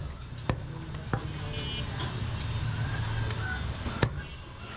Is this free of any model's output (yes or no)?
yes